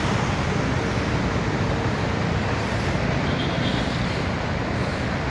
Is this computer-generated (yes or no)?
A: no